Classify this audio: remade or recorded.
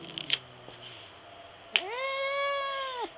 recorded